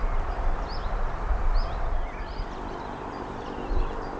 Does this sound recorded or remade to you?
recorded